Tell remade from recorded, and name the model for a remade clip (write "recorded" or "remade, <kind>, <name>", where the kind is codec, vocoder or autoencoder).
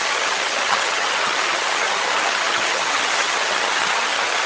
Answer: remade, vocoder, HiFi-GAN